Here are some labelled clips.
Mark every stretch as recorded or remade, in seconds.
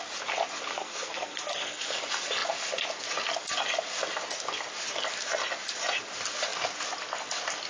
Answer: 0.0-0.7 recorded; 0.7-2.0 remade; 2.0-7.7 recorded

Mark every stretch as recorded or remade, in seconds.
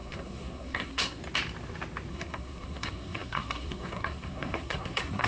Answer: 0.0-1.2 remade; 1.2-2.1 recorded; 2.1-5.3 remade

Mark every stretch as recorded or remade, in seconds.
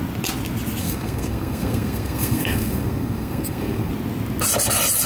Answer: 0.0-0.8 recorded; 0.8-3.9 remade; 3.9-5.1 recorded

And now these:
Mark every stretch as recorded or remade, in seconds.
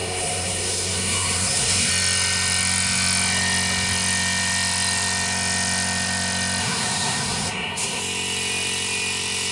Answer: 0.0-1.9 remade; 1.9-6.6 recorded; 6.6-8.0 remade; 8.0-9.5 recorded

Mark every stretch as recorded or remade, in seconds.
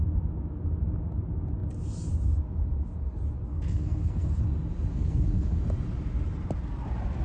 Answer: 0.0-3.5 recorded; 3.5-4.4 remade; 4.4-4.9 recorded; 4.9-5.6 remade; 5.6-7.2 recorded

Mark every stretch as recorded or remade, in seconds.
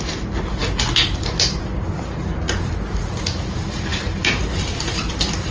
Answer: 0.0-5.5 recorded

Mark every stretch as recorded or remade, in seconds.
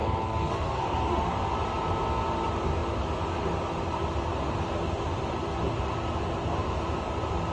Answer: 0.0-1.3 remade; 1.3-7.5 recorded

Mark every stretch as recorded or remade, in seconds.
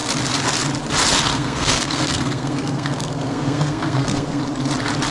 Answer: 0.0-1.3 recorded; 1.3-4.4 remade; 4.4-5.1 recorded